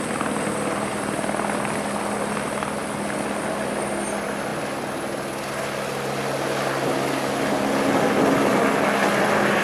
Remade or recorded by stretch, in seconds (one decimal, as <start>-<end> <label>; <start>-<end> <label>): 0.0-9.6 recorded